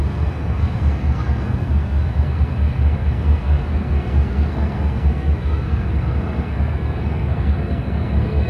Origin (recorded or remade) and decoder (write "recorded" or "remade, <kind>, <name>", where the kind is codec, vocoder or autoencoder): remade, codec, SNAC